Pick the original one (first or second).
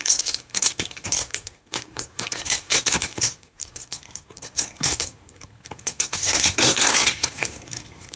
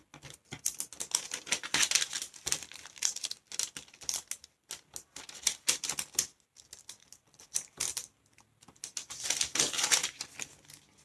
second